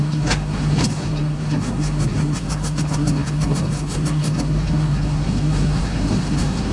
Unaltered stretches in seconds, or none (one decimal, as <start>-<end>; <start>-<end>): none